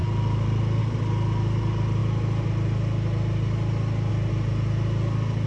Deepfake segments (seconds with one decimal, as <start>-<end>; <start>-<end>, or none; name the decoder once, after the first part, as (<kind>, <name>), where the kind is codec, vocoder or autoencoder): none

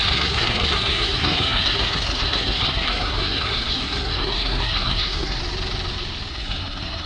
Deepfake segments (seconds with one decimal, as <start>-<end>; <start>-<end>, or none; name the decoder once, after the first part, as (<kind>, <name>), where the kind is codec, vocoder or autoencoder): 0.0-5.4 (codec, SNAC); 6.3-7.1

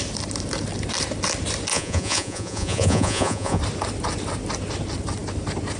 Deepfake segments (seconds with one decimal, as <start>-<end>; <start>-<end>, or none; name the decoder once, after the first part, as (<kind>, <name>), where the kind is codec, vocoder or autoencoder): 1.7-3.6 (vocoder, Vocos)

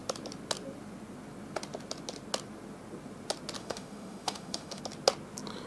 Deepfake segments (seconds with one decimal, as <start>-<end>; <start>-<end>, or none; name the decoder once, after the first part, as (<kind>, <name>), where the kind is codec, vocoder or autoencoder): 3.6-4.8 (autoencoder, DAC-VAE)

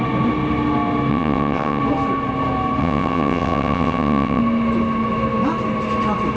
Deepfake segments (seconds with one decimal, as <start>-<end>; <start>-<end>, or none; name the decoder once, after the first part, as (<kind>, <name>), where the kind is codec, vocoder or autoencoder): 1.1-1.8 (vocoder, WaveNeXt); 2.8-4.4

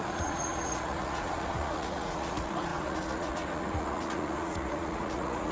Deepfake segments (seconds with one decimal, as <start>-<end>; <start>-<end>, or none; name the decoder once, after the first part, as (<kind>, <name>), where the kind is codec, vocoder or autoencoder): 0.0-5.5 (vocoder, Vocos)